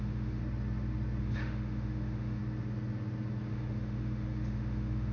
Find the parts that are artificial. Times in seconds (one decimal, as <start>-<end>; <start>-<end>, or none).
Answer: 0.0-0.4; 1.2-2.4; 3.5-5.1